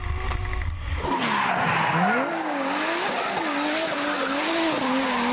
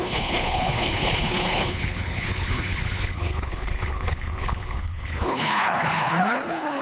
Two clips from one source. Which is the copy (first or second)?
second